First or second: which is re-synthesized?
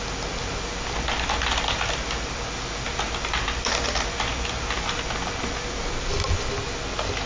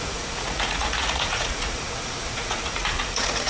second